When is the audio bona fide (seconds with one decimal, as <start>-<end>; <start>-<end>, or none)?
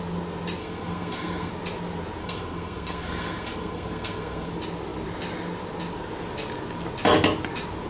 0.0-0.6; 1.5-2.2; 4.5-7.9